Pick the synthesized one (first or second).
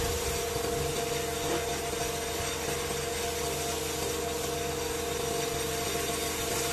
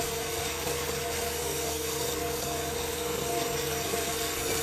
second